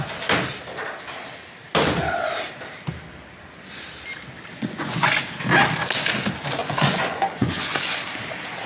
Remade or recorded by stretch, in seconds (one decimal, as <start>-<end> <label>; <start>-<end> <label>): 0.0-4.5 recorded; 4.5-5.2 remade; 5.2-6.6 recorded; 6.6-8.0 remade; 8.0-8.7 recorded